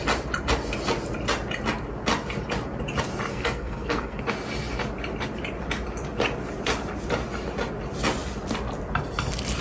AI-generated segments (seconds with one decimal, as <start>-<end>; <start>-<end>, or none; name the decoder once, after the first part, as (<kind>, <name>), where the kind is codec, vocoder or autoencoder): 3.3-4.2 (codec, SNAC)